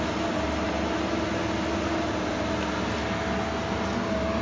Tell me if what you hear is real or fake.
real